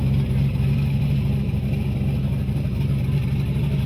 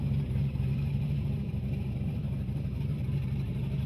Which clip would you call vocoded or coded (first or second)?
second